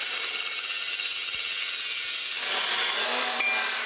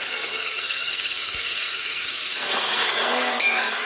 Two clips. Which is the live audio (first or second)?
first